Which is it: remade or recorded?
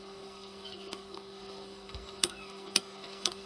remade